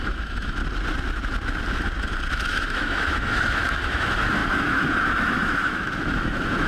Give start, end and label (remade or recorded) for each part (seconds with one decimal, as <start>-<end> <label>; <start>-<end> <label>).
0.0-0.6 remade; 0.6-2.3 recorded; 2.3-6.7 remade